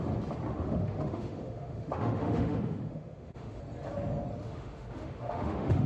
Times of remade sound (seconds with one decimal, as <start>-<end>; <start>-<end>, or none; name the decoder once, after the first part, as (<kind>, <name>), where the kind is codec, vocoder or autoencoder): 0.5-3.6 (autoencoder, DAC-VAE); 4.4-5.9

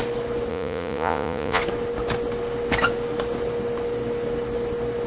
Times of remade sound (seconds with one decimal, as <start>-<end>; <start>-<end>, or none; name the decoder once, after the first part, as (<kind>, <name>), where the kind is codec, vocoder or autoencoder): 0.5-1.6 (vocoder, Vocos)

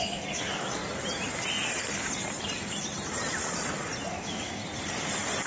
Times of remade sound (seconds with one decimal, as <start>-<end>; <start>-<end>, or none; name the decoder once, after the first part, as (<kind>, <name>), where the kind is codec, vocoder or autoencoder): 0.0-0.8 (autoencoder, DAC-VAE); 4.1-4.6

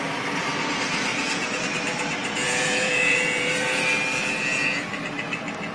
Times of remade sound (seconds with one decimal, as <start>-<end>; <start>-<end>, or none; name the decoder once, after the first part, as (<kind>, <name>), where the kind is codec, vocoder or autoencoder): 1.1-1.6 (vocoder, Vocos); 2.2-3.8

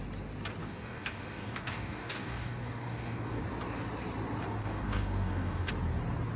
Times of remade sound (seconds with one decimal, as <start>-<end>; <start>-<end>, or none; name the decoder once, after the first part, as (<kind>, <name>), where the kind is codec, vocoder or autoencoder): 0.6-3.4 (codec, DAC); 4.6-5.7

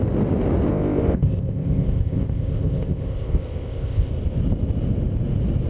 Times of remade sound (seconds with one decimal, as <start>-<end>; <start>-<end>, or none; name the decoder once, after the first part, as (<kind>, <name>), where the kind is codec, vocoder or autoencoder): 0.7-4.1 (codec, ZipCodec)